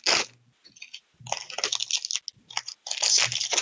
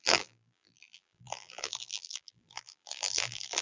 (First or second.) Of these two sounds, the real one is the first